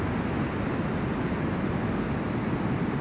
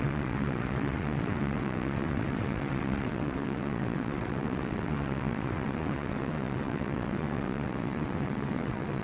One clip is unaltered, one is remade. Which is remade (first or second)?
second